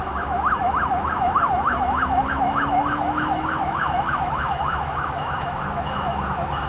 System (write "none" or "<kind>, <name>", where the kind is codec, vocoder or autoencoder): autoencoder, DAC-VAE